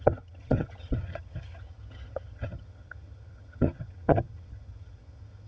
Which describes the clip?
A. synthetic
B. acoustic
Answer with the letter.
A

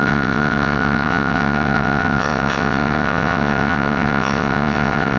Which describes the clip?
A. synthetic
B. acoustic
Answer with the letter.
A